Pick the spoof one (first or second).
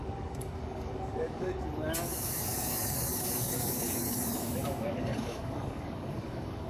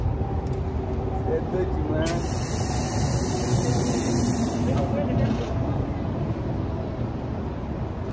first